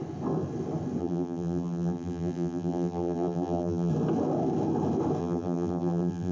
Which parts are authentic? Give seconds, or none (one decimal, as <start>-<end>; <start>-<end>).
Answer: 0.0-1.0; 3.9-5.2